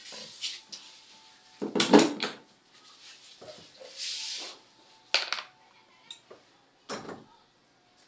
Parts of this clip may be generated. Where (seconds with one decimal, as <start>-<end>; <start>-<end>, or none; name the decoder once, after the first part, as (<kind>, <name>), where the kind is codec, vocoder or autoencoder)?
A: none